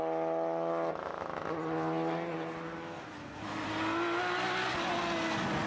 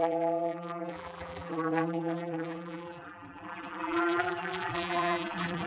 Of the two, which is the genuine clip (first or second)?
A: first